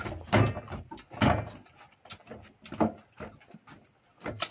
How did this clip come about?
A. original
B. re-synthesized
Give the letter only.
A